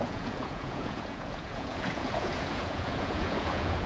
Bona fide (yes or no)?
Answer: no